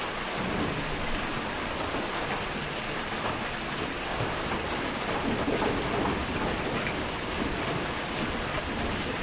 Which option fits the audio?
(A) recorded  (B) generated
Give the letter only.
B